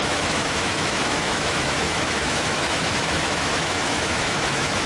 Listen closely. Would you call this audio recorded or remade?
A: remade